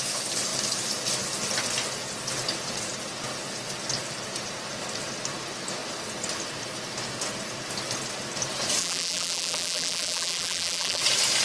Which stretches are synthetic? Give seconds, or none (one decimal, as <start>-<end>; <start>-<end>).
8.8-11.0